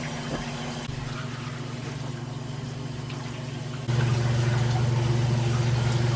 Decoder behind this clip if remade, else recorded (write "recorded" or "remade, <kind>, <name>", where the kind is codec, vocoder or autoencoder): recorded